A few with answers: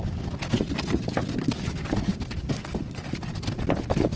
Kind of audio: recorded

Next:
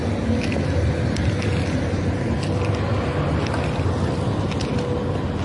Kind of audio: recorded